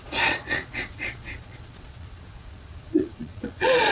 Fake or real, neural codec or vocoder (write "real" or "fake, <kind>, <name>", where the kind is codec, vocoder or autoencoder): fake, vocoder, Vocos